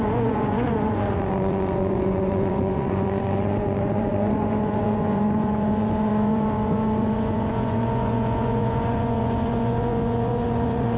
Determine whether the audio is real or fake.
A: fake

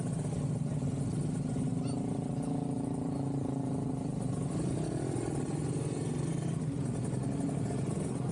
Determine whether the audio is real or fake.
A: real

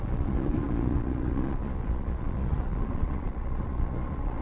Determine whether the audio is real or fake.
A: fake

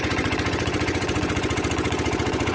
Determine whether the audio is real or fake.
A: fake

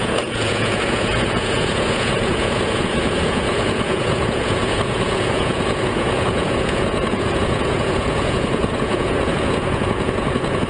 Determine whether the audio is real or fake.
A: fake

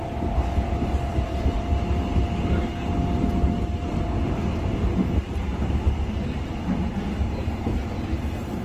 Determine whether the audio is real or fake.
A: real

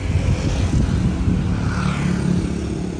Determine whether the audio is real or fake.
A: real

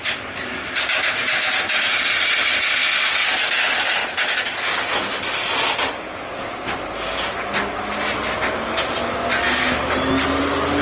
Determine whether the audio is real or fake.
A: real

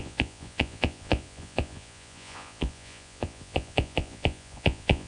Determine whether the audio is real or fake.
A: fake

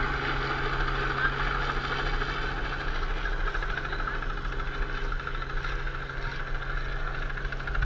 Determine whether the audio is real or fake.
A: real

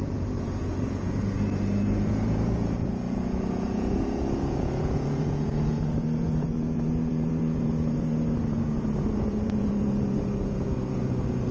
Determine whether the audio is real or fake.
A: fake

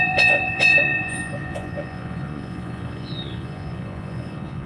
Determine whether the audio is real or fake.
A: fake